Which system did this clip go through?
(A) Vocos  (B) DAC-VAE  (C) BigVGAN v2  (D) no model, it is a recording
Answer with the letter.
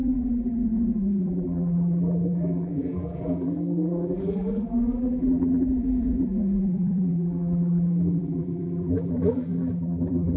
C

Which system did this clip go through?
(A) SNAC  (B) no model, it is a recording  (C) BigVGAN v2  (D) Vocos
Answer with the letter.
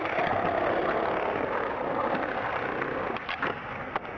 B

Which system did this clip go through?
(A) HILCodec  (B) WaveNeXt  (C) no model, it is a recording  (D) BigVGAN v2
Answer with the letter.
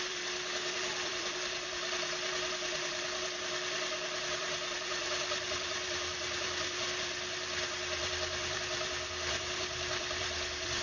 D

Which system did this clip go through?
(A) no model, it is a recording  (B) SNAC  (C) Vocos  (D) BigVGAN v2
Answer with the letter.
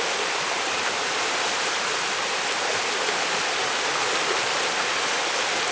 A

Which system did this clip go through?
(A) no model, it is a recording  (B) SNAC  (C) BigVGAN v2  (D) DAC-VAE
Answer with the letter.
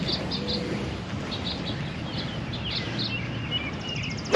A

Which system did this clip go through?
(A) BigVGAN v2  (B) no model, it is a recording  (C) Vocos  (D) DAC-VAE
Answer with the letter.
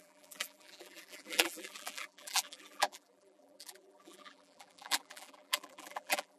A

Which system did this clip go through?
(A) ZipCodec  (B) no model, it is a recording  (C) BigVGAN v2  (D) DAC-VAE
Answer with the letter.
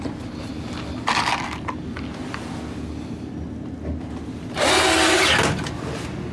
B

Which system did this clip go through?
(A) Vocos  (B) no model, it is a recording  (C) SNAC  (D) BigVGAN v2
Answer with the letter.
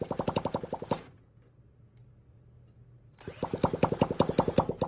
B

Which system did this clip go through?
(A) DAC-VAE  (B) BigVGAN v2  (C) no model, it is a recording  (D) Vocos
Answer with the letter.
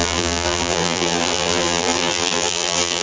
B